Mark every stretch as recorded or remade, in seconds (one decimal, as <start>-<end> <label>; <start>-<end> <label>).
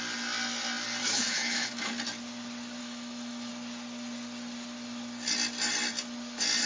0.0-1.0 recorded; 1.0-1.9 remade; 1.9-2.8 recorded; 2.8-3.5 remade; 3.5-6.7 recorded